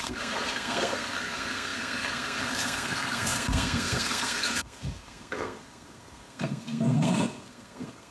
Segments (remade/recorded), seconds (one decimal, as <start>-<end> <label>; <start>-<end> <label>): 0.0-8.1 remade